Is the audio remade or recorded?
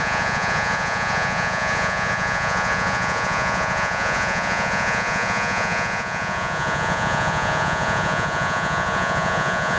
remade